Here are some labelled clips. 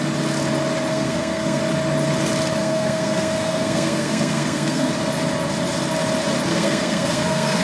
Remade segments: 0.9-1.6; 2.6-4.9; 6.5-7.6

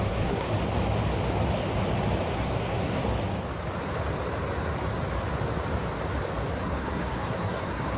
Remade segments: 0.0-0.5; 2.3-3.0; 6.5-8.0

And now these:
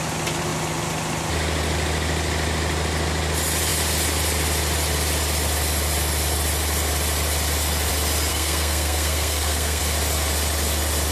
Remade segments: 8.3-9.8

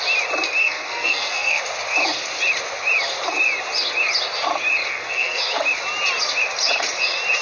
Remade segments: 0.6-1.6; 4.8-5.4

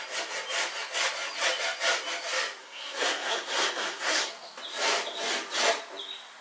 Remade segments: 2.6-4.3

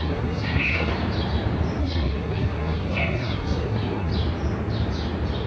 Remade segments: 0.0-0.9; 1.8-4.1

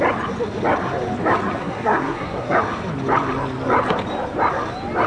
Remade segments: 1.6-2.6

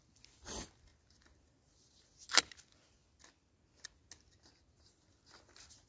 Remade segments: none